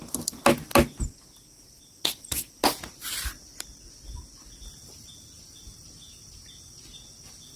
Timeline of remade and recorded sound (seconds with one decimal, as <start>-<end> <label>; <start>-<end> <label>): 0.0-7.6 recorded